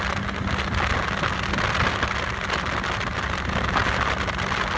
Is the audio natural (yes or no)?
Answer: yes